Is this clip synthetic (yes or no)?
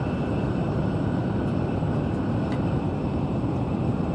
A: no